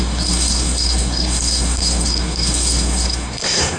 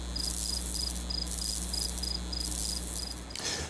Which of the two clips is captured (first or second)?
second